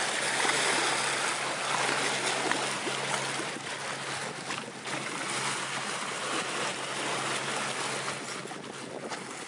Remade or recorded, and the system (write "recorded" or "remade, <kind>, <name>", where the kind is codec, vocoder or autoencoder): recorded